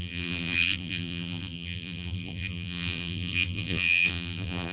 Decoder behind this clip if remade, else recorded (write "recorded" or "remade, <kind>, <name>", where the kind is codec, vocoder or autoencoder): remade, vocoder, BigVGAN v2